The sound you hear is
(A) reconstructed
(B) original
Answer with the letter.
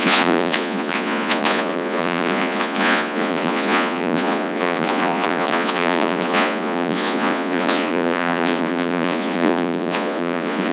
A